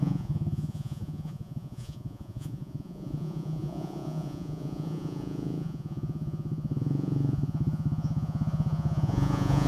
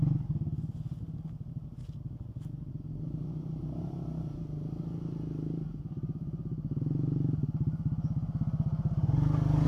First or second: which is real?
second